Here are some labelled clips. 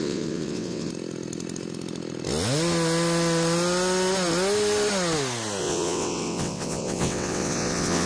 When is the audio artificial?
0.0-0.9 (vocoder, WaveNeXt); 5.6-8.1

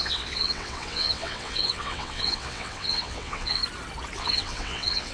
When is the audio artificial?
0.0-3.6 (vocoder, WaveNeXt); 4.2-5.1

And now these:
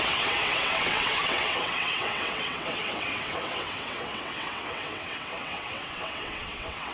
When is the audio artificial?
0.0-6.9 (vocoder, WaveNeXt)

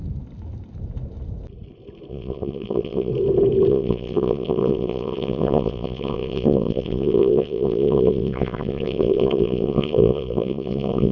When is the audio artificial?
2.1-3.1 (vocoder, WaveNeXt); 3.7-11.1

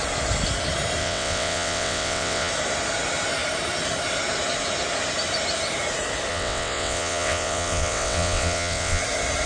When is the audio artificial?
1.0-2.5 (vocoder, WaveNeXt); 6.3-9.0

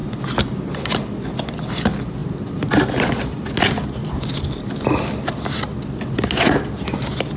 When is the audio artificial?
none

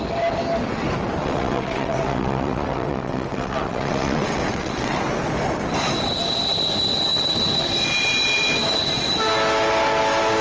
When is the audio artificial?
1.2-5.2 (vocoder, WaveNeXt)